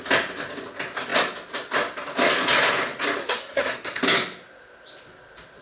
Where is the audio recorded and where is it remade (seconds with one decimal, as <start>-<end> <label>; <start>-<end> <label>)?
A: 0.0-3.2 recorded; 3.2-4.0 remade; 4.0-5.6 recorded